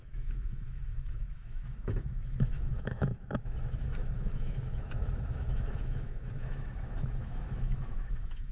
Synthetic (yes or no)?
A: yes